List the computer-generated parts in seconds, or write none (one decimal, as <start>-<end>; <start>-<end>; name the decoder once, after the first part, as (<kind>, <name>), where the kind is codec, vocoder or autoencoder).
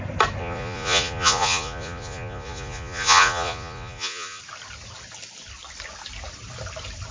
0.4-4.4 (vocoder, Vocos)